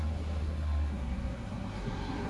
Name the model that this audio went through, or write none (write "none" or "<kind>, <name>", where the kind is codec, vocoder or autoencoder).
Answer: codec, SNAC